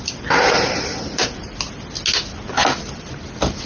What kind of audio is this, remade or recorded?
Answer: recorded